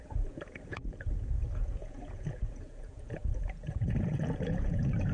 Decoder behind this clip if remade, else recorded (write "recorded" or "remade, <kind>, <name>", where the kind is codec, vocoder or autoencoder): remade, vocoder, Vocos